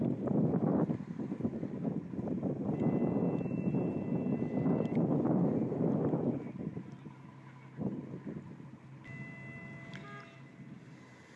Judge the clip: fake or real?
real